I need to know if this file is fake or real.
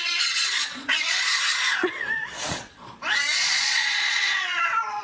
fake